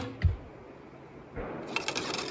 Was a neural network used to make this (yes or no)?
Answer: no